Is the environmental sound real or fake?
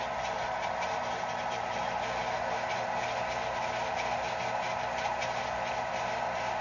real